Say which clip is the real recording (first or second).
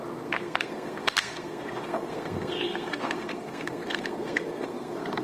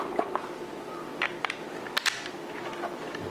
second